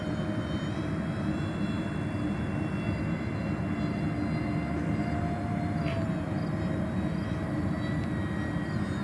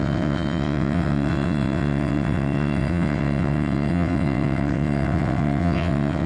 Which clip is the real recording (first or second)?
first